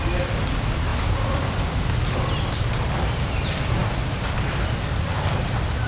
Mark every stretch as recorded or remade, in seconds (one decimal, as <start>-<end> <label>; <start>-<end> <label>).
0.0-5.9 recorded